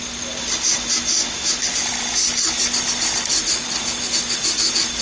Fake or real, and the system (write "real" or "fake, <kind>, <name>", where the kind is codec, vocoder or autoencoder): real